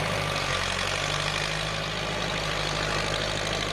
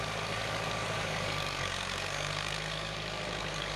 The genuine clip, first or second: first